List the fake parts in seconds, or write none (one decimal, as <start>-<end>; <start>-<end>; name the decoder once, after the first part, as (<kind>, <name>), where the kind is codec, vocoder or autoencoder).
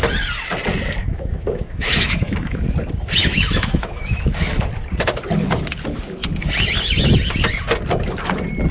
1.0-2.6 (autoencoder, DAC-VAE); 3.2-4.5